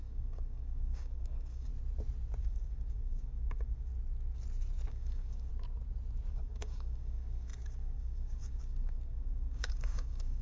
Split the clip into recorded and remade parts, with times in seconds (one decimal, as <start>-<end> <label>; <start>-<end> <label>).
0.0-1.7 remade; 1.7-2.4 recorded; 2.4-3.9 remade; 3.9-4.9 recorded; 4.9-5.5 remade; 5.5-6.3 recorded; 6.3-10.4 remade